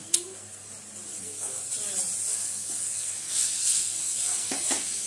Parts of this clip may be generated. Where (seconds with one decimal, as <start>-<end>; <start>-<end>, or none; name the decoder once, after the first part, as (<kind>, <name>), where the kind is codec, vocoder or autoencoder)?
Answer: 0.0-0.7 (codec, SNAC); 1.1-1.7; 2.3-5.1